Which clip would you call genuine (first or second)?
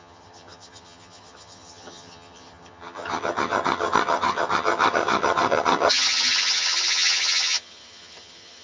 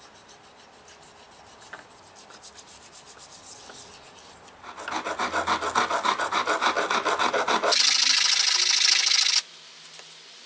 second